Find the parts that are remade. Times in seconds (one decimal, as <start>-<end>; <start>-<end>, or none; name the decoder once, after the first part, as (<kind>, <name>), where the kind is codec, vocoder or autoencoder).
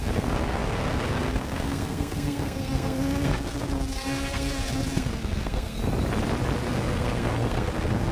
0.0-5.8 (codec, SNAC); 6.7-8.1